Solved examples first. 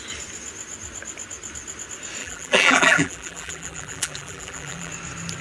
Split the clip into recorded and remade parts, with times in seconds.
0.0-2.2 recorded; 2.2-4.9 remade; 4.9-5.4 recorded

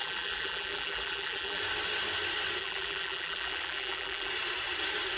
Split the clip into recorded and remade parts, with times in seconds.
0.0-1.6 remade; 1.6-2.6 recorded; 2.6-4.3 remade; 4.3-5.2 recorded

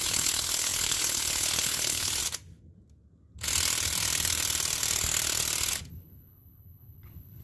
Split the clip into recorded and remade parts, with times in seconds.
0.0-2.2 remade; 2.2-5.9 recorded; 5.9-7.4 remade

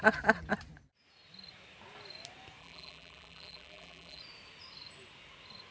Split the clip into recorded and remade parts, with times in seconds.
0.0-2.6 recorded; 2.6-4.2 remade; 4.2-5.7 recorded

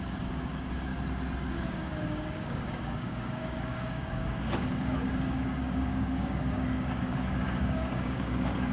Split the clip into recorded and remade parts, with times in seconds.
0.0-0.9 remade; 0.9-1.5 recorded; 1.5-8.7 remade

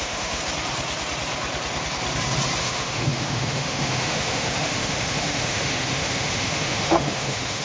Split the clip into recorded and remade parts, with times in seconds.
0.0-0.4 remade; 0.4-2.6 recorded; 2.6-7.6 remade

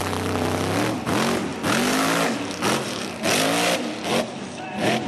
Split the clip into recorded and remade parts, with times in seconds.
0.0-5.1 recorded